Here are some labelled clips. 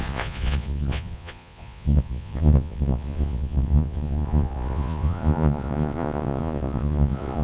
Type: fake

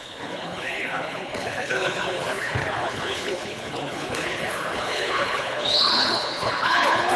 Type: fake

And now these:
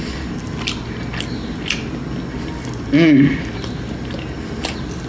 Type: real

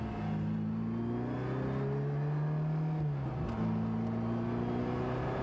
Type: real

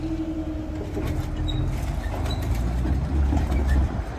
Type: real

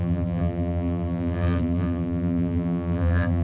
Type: fake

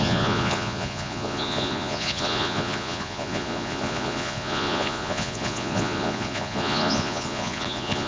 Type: fake